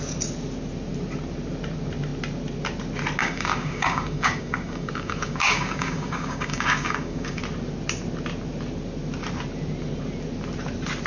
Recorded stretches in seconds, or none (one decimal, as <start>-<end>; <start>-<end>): 0.0-3.2; 7.4-11.1